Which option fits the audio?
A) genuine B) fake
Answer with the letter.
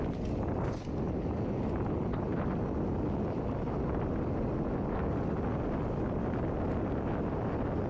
A